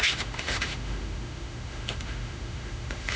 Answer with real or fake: fake